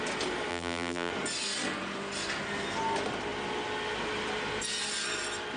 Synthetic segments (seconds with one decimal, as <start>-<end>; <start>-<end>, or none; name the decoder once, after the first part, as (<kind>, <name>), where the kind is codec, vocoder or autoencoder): 0.5-1.1 (vocoder, BigVGAN v2)